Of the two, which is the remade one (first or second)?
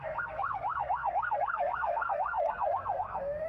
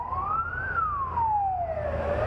first